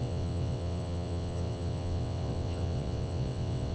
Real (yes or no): no